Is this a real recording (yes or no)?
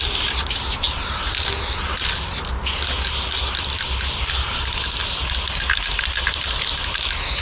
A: yes